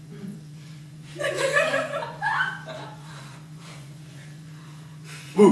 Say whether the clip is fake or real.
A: fake